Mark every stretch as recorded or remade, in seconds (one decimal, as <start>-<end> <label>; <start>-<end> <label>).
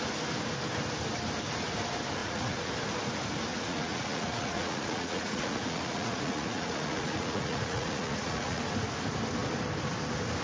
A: 0.0-2.2 recorded; 2.2-2.7 remade; 2.7-3.5 recorded; 3.5-8.6 remade; 8.6-10.4 recorded